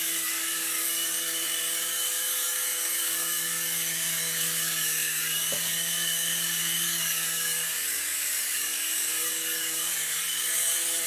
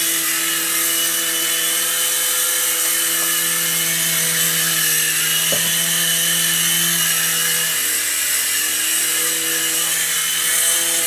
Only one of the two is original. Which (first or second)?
second